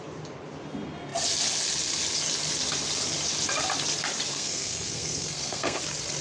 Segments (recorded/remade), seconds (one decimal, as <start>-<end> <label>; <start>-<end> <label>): 0.0-4.3 recorded; 4.3-5.8 remade; 5.8-6.2 recorded

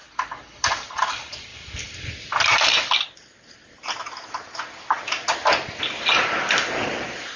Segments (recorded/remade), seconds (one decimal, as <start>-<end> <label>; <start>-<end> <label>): 0.0-7.4 recorded